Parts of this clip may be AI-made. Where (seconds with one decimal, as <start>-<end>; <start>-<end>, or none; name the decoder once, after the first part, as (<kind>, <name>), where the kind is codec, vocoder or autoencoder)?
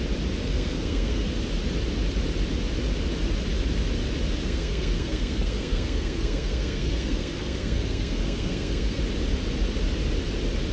0.4-1.3 (codec, SNAC); 4.4-9.0